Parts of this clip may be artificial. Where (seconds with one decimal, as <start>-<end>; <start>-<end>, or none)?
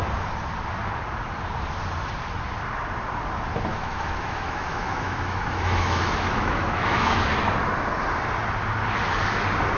3.7-7.3